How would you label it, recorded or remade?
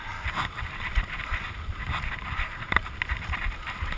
recorded